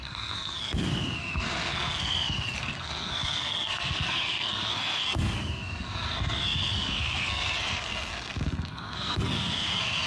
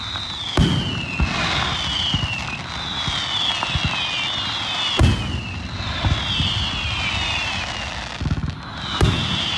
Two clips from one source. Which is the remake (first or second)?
first